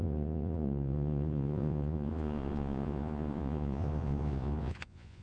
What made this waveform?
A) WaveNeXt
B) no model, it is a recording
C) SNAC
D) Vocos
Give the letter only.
D